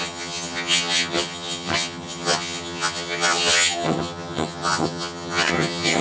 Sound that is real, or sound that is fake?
fake